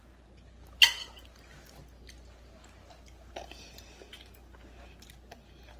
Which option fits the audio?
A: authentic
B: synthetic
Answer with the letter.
A